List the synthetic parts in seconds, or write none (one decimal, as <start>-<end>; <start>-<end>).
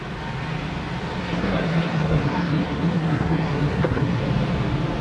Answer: 1.2-4.2